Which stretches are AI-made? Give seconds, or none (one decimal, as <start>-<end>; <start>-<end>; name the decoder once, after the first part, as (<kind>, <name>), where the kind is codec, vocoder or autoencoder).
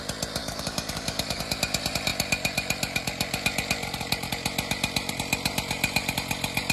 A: 0.4-1.4 (codec, DAC)